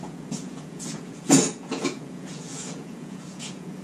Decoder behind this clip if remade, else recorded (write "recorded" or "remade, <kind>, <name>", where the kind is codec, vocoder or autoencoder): remade, vocoder, Vocos